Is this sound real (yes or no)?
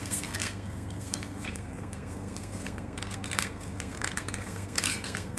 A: no